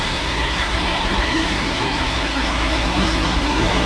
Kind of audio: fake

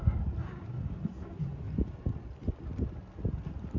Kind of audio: real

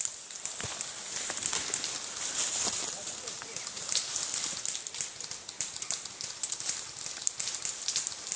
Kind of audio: real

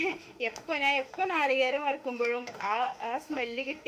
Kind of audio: fake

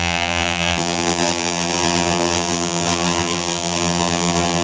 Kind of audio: fake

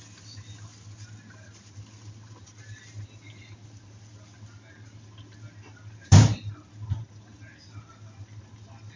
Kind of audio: real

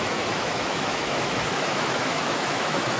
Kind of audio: fake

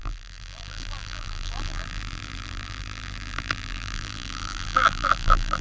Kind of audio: fake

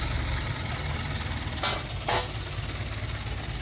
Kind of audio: real